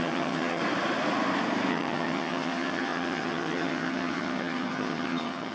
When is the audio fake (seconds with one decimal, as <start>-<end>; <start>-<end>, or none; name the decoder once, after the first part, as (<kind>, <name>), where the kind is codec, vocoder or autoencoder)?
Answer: 0.0-0.6 (vocoder, HiFi-GAN); 1.7-5.5